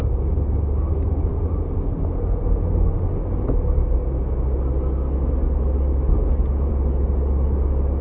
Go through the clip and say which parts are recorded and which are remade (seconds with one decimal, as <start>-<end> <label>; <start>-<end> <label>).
0.0-8.0 recorded